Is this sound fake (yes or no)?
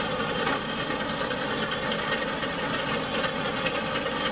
no